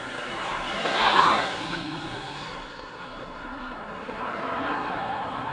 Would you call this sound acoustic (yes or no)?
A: no